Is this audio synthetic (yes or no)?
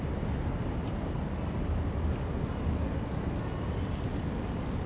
no